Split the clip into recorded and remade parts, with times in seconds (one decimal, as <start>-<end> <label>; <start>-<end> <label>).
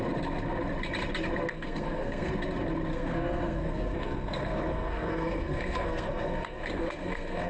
0.0-1.5 recorded; 1.5-2.3 remade; 2.3-2.9 recorded; 2.9-7.5 remade